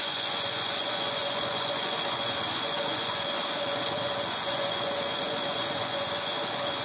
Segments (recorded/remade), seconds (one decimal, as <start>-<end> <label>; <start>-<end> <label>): 0.0-6.8 remade